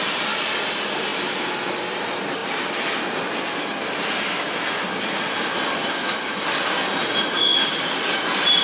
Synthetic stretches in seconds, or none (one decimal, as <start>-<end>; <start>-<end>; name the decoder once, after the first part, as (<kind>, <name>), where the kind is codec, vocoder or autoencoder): none